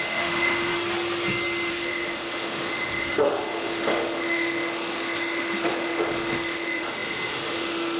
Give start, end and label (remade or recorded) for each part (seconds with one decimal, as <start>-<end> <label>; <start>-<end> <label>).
0.0-0.7 remade; 0.7-1.7 recorded; 1.7-8.0 remade